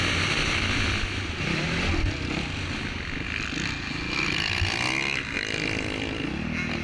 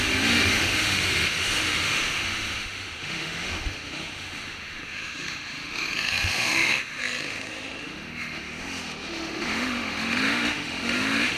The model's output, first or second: second